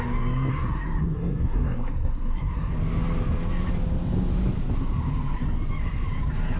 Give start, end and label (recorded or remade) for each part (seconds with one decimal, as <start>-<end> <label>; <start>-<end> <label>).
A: 0.0-0.5 recorded; 0.5-2.7 remade; 2.7-6.6 recorded